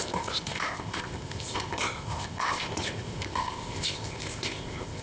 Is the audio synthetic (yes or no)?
yes